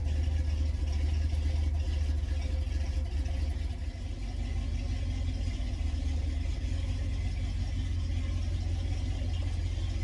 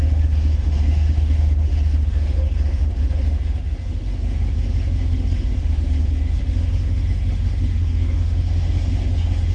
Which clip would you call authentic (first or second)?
first